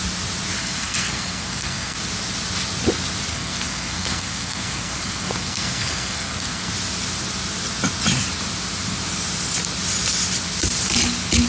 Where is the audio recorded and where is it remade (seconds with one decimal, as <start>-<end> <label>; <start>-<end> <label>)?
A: 0.0-0.6 recorded; 0.6-2.0 remade; 2.0-3.3 recorded; 3.3-6.7 remade; 6.7-11.5 recorded